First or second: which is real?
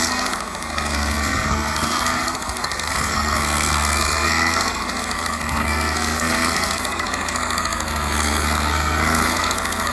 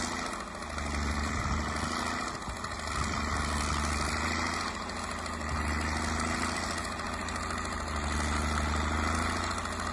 second